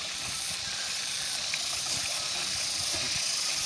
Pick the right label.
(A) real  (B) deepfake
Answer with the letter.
A